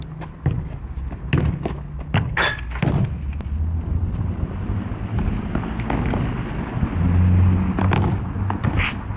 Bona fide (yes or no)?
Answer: yes